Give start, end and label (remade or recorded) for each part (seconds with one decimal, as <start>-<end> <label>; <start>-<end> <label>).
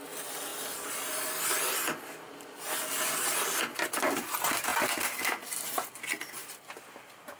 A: 0.0-7.4 recorded